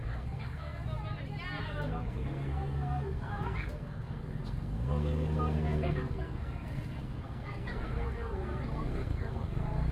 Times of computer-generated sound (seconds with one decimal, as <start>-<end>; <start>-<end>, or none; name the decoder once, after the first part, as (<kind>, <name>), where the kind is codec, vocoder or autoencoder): 0.0-0.8 (codec, SNAC); 1.6-9.9